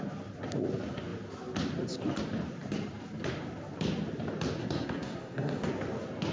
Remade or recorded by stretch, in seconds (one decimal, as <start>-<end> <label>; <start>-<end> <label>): 0.0-4.6 recorded; 4.6-5.7 remade; 5.7-6.3 recorded